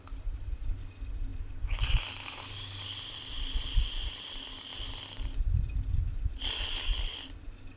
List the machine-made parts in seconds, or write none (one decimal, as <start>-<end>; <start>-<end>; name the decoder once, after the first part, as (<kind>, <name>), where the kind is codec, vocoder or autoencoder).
none